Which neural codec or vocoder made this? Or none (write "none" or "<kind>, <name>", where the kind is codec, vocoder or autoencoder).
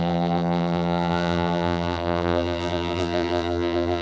vocoder, BigVGAN v2